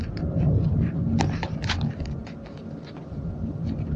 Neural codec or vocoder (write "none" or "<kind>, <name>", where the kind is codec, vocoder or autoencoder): none